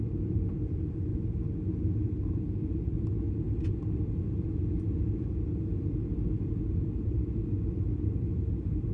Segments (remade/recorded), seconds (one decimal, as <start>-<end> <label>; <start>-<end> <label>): 0.0-1.1 remade; 1.1-2.6 recorded; 2.6-8.9 remade